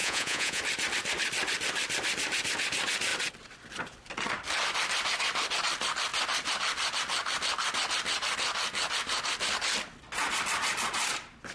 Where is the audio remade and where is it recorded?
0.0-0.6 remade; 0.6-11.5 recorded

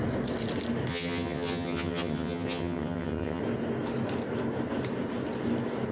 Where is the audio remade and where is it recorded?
0.0-0.9 recorded; 0.9-3.4 remade; 3.4-5.9 recorded

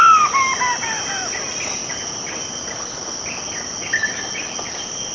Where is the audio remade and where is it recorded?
0.0-5.1 recorded

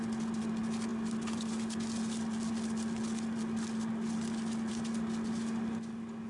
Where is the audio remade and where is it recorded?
0.0-6.3 recorded

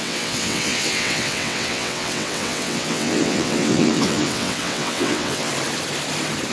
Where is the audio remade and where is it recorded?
0.0-5.5 remade; 5.5-6.5 recorded

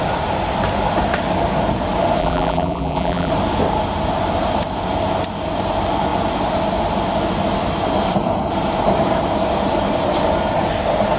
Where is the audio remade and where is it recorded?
0.0-2.2 recorded; 2.2-3.3 remade; 3.3-11.2 recorded

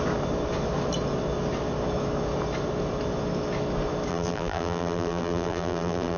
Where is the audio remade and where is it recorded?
0.0-4.1 recorded; 4.1-6.2 remade